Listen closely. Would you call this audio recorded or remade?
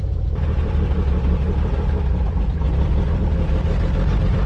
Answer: remade